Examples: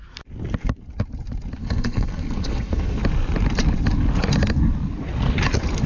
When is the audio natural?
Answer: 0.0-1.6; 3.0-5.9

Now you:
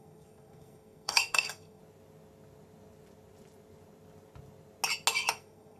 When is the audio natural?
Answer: 1.8-5.3

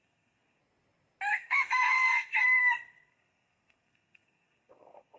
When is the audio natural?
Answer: 0.6-1.3

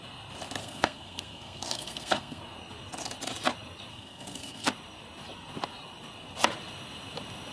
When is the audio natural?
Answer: 0.0-0.6; 2.4-3.9; 4.7-7.5

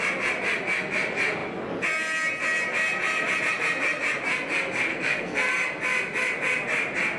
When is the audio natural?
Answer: 0.0-4.9; 5.5-7.2

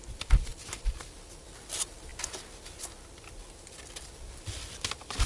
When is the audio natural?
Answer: 0.0-5.3

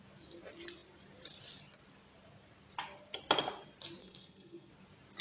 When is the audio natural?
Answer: 0.0-4.0; 4.7-5.2

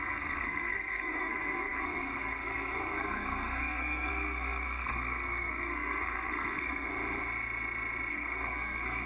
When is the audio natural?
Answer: 6.9-8.1